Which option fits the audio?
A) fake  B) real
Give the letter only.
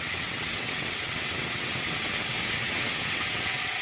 A